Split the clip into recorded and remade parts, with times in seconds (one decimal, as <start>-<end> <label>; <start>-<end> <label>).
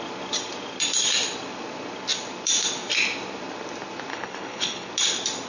0.0-4.1 recorded; 4.1-4.9 remade; 4.9-5.5 recorded